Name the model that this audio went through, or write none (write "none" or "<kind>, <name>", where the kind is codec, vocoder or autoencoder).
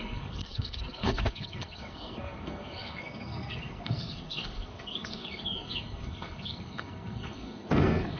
codec, SNAC